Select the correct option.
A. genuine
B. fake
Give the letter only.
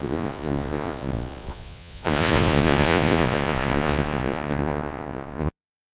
B